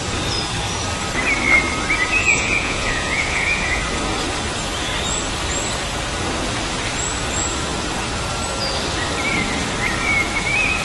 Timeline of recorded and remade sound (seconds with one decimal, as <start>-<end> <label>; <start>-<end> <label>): 0.0-2.2 recorded; 2.2-3.8 remade; 3.8-10.8 recorded